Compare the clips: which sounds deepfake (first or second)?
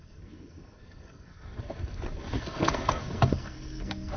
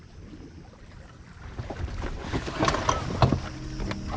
first